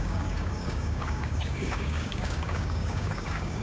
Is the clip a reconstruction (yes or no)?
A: yes